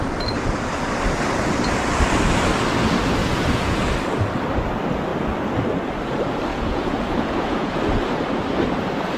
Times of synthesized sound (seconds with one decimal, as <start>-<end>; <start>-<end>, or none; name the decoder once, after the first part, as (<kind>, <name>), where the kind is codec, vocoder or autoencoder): 3.2-3.8 (vocoder, Vocos); 6.5-7.8